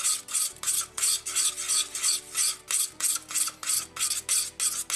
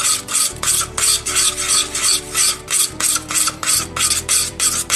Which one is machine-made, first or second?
second